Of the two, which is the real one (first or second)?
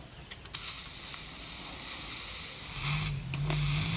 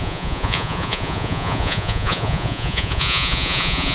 first